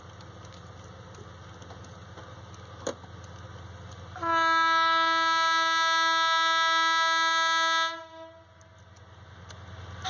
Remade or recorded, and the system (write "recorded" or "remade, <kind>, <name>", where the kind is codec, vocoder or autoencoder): recorded